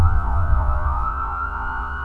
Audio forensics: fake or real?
fake